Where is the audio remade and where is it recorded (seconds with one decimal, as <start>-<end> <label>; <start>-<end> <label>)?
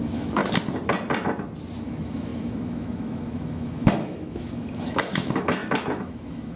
0.0-0.4 remade; 0.4-1.8 recorded; 1.8-6.6 remade